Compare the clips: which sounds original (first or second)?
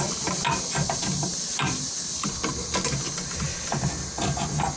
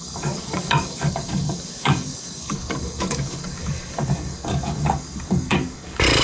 first